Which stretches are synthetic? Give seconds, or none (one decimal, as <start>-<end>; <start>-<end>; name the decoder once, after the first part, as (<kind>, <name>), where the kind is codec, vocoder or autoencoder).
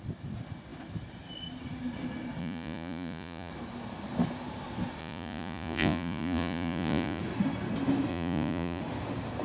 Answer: 2.4-3.5 (vocoder, Vocos); 5.0-7.2; 8.1-8.8